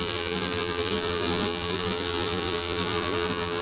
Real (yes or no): no